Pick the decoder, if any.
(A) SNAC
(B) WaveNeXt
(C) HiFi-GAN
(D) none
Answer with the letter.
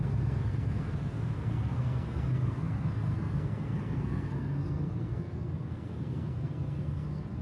A